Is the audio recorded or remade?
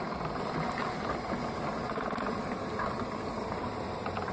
recorded